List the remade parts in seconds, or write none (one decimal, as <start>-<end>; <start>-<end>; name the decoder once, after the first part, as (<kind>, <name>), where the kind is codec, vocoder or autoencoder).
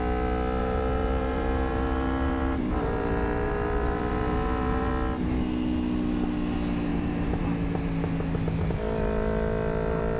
0.6-4.9 (vocoder, BigVGAN v2); 6.9-7.4